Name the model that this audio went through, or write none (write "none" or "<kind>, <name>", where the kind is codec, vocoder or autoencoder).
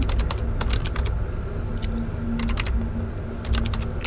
none